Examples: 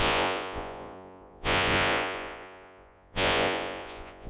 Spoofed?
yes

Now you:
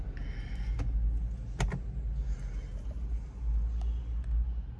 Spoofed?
no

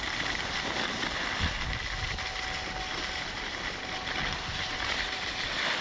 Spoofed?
no